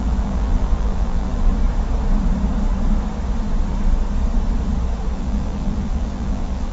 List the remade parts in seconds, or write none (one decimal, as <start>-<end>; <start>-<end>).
0.0-1.5; 5.1-6.7